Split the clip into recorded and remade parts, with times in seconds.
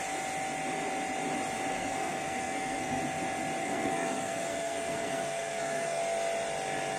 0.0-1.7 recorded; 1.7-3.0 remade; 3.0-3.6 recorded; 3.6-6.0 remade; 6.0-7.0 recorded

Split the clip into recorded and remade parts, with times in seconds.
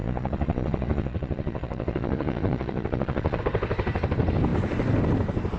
0.0-3.4 remade; 3.4-5.6 recorded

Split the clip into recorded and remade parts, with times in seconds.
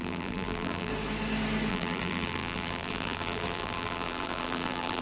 0.0-0.9 remade; 0.9-1.7 recorded; 1.7-5.0 remade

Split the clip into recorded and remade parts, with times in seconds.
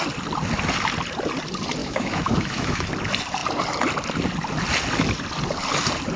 0.0-1.8 recorded; 1.8-2.9 remade; 2.9-6.2 recorded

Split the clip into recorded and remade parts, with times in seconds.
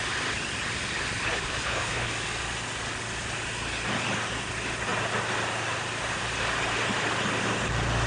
0.0-1.3 recorded; 1.3-2.1 remade; 2.1-8.1 recorded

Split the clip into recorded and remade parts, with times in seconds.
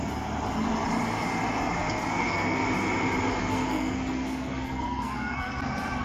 0.0-2.1 recorded; 2.1-2.6 remade; 2.6-3.4 recorded; 3.4-5.6 remade; 5.6-6.0 recorded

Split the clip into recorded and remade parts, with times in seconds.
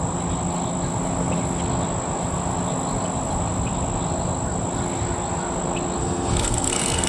0.0-6.0 recorded; 6.0-7.1 remade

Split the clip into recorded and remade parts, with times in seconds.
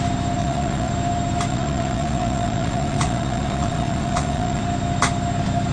0.0-0.4 recorded; 0.4-0.9 remade; 0.9-1.5 recorded; 1.5-4.6 remade; 4.6-5.7 recorded